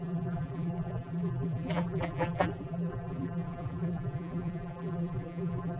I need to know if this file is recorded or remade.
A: remade